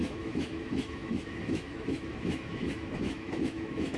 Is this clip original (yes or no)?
no